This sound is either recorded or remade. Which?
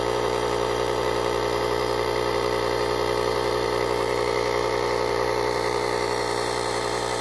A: remade